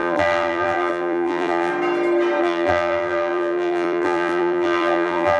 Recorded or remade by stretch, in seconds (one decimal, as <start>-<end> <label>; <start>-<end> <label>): 0.0-1.7 remade; 1.7-2.4 recorded; 2.4-5.4 remade